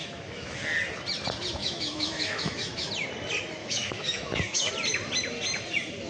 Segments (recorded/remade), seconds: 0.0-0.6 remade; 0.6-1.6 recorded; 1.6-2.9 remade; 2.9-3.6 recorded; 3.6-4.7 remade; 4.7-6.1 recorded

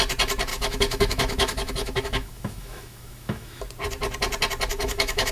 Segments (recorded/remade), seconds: 0.0-0.5 recorded; 0.5-3.6 remade; 3.6-4.7 recorded; 4.7-5.3 remade

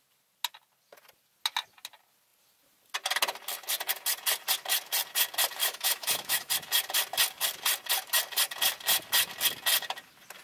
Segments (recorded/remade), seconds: 0.0-5.6 recorded; 5.6-6.5 remade; 6.5-10.4 recorded

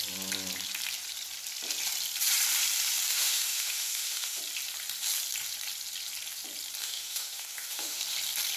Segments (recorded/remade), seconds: 0.0-3.1 recorded; 3.1-4.4 remade; 4.4-6.8 recorded; 6.8-8.0 remade; 8.0-8.6 recorded

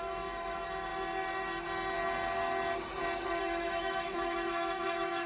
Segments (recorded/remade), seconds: 0.0-0.9 remade; 0.9-3.4 recorded; 3.4-5.3 remade

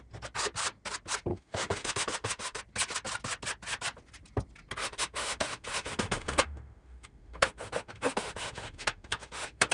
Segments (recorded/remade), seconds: 0.0-1.3 recorded; 1.3-2.6 remade; 2.6-4.8 recorded; 4.8-9.7 remade

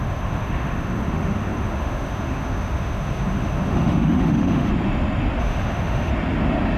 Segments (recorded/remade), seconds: 0.0-4.7 remade; 4.7-5.4 recorded; 5.4-6.1 remade; 6.1-6.8 recorded